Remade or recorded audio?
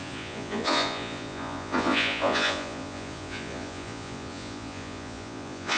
remade